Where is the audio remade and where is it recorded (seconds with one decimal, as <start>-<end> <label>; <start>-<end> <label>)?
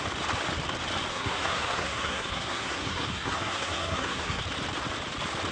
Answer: 0.0-1.1 recorded; 1.1-4.4 remade; 4.4-5.5 recorded